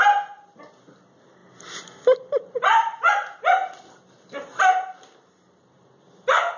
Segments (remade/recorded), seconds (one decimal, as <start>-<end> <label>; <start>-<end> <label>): 0.0-6.6 recorded